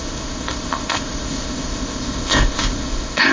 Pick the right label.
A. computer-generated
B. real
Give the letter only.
A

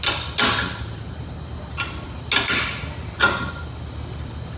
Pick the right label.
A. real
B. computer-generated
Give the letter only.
A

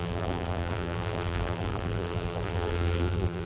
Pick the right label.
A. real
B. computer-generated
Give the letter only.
B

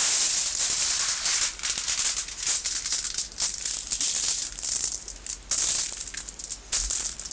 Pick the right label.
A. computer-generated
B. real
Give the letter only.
B